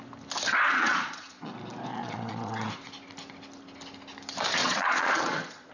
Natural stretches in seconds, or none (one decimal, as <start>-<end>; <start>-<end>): 0.0-0.7; 1.5-1.9; 2.7-4.6